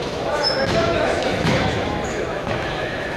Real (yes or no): no